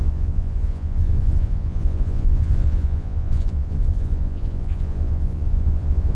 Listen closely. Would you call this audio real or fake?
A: fake